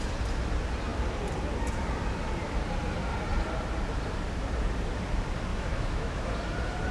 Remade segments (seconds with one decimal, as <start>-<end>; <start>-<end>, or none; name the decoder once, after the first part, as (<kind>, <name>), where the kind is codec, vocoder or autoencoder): 5.5-6.3 (autoencoder, DAC-VAE)